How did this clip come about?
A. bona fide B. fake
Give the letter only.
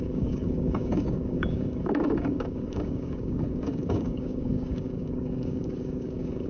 B